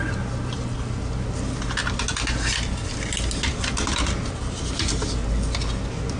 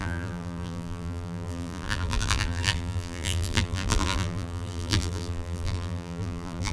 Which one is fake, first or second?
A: second